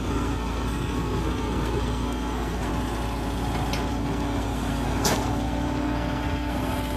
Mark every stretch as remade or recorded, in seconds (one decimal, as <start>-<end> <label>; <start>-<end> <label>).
0.0-2.7 remade; 2.7-3.9 recorded; 3.9-7.0 remade